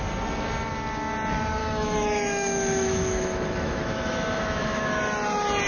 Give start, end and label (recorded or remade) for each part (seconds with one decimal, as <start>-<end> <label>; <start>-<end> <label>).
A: 0.0-1.6 recorded; 1.6-5.0 remade; 5.0-5.7 recorded